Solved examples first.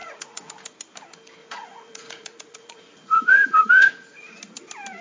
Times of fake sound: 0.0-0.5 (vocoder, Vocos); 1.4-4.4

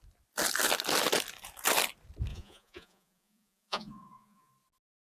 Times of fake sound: 2.3-4.5 (vocoder, Vocos)